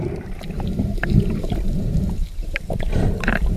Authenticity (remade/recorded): remade